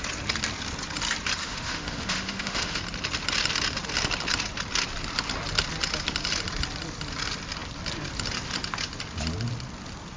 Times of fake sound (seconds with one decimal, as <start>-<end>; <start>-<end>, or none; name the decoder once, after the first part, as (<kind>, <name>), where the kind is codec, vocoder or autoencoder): 1.4-2.8 (autoencoder, DAC-VAE)